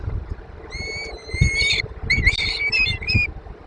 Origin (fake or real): fake